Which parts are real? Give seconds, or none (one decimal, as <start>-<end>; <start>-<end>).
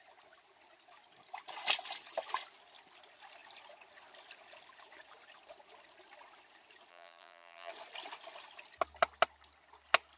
0.0-6.9; 7.7-10.2